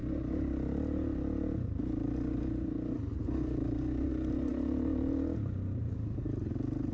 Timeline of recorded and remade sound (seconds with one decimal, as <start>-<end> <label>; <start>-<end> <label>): 0.0-6.9 recorded